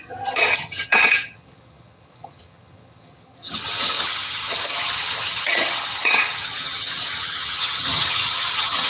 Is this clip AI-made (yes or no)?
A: yes